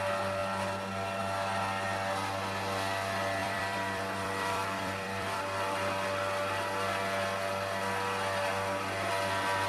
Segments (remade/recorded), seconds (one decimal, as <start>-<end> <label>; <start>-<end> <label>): 0.0-3.4 recorded; 3.4-5.4 remade; 5.4-9.7 recorded